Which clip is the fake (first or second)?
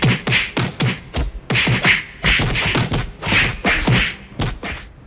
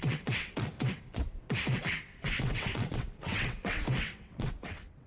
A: second